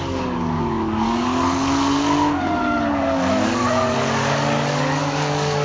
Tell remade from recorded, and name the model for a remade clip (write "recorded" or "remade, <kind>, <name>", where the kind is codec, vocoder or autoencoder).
remade, codec, DAC